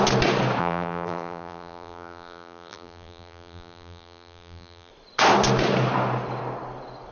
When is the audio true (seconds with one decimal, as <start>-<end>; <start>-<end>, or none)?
0.0-0.6; 4.9-7.1